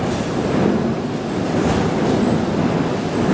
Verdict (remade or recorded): recorded